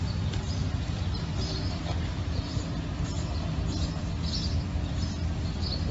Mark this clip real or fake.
real